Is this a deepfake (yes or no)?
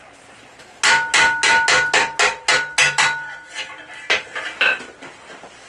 no